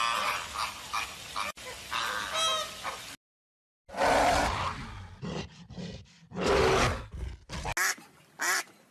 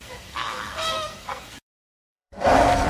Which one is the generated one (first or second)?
second